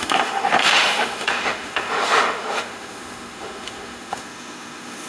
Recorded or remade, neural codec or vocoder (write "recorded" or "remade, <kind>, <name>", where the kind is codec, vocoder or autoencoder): remade, autoencoder, DAC-VAE